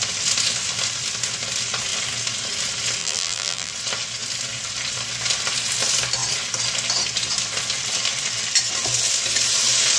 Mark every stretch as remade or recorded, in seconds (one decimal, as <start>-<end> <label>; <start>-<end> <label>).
0.0-3.0 recorded; 3.0-3.7 remade; 3.7-10.0 recorded